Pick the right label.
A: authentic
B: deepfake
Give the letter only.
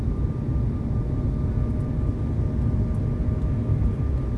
A